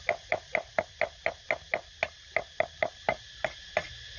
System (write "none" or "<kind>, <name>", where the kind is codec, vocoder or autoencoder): none